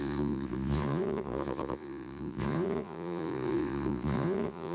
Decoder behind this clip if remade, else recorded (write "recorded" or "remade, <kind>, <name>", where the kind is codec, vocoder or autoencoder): remade, vocoder, Vocos